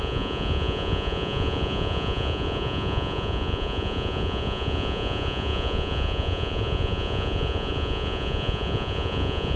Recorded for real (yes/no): no